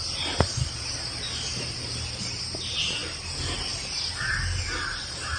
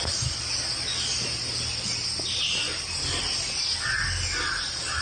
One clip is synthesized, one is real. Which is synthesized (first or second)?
first